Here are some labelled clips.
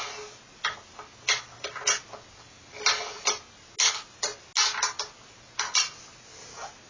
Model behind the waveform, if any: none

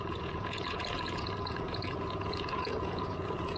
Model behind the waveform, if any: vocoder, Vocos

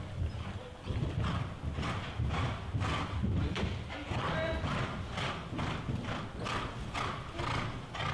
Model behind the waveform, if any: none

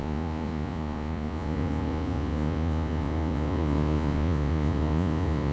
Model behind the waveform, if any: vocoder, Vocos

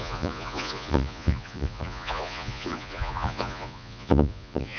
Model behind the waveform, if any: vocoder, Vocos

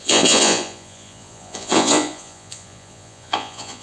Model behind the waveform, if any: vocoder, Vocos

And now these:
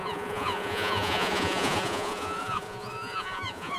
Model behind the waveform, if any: vocoder, Vocos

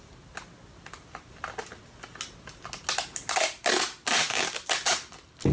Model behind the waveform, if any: none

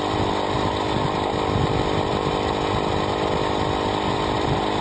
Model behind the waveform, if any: none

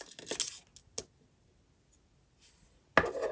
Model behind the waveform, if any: none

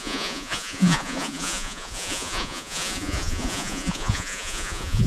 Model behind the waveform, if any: vocoder, Vocos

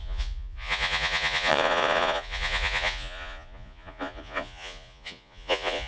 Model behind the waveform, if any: vocoder, Vocos